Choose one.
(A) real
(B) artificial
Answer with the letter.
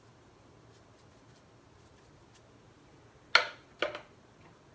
A